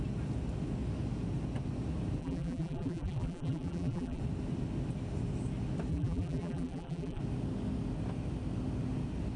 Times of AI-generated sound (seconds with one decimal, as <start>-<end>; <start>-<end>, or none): 2.2-4.2; 5.9-7.2